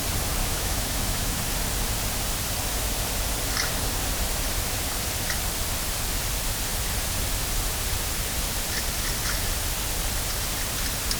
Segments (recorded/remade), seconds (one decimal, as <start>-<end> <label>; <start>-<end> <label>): 0.0-0.4 recorded; 0.4-1.4 remade; 1.4-11.2 recorded